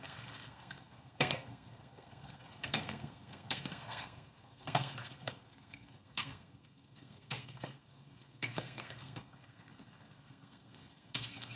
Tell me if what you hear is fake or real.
fake